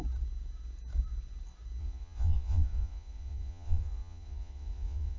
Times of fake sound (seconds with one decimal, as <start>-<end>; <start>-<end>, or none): 1.8-5.2